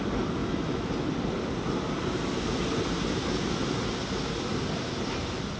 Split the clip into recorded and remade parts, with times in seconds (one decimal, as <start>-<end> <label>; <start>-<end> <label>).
0.0-0.4 recorded; 0.4-0.9 remade; 0.9-5.6 recorded